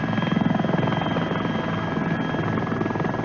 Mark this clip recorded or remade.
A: recorded